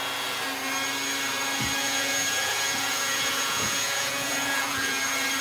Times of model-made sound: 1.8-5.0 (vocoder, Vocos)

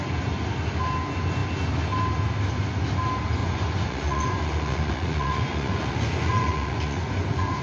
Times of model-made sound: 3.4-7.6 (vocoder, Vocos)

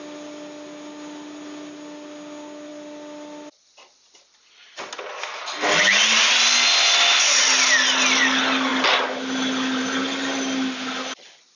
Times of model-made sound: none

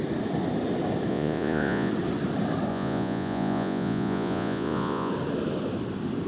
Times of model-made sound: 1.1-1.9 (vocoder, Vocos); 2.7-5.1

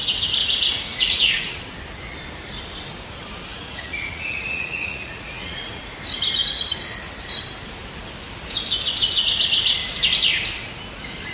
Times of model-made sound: 0.4-1.6 (vocoder, Vocos); 3.5-5.8

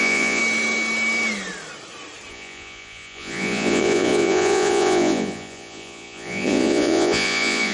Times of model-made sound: 0.0-0.4 (vocoder, Vocos); 2.3-7.7

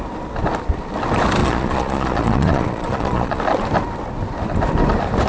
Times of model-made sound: 1.4-3.4 (vocoder, Vocos)

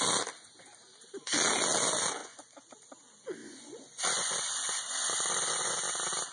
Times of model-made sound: 2.2-2.7 (vocoder, Vocos); 3.4-5.8